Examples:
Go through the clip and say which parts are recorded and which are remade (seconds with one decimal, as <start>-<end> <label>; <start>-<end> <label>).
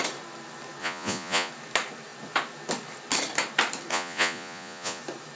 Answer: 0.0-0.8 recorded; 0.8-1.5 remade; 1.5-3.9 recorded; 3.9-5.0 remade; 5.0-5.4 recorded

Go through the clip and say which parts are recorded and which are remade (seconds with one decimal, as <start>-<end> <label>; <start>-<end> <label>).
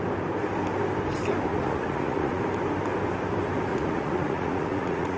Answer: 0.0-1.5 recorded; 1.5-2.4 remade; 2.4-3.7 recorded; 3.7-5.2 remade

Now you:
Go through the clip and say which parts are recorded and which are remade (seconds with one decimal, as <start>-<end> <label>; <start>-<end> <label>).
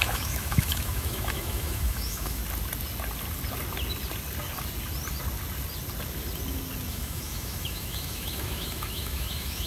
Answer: 0.0-2.4 remade; 2.4-6.9 recorded; 6.9-9.7 remade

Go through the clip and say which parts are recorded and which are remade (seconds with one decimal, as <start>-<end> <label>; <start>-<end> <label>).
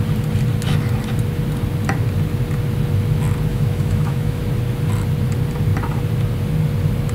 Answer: 0.0-3.5 recorded; 3.5-4.4 remade; 4.4-7.1 recorded